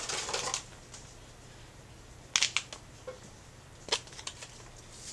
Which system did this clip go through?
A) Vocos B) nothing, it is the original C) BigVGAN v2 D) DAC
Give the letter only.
B